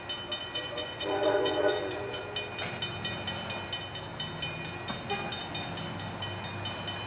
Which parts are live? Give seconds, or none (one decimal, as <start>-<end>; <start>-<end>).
0.0-0.4; 2.2-7.1